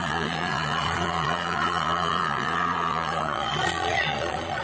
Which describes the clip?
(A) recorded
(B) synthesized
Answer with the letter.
B